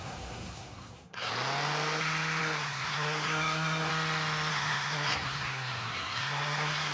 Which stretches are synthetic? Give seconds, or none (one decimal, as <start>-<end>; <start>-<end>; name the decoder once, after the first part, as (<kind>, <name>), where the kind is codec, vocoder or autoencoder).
0.0-1.3 (codec, SNAC); 2.4-3.9; 4.5-6.9